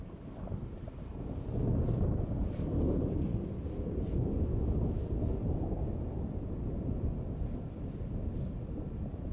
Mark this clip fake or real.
real